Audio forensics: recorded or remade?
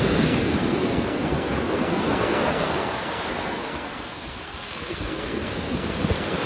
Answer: remade